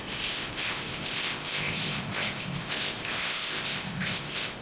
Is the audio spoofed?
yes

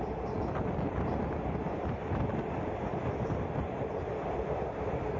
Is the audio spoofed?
no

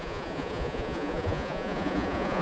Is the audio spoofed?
yes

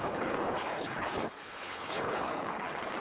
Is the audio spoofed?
yes